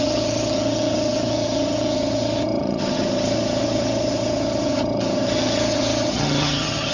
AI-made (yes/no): yes